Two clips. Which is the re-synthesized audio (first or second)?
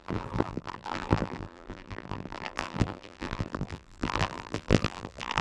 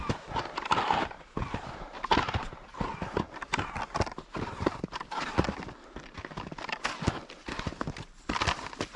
first